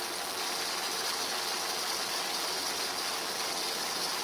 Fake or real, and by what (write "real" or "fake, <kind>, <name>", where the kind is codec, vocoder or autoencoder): real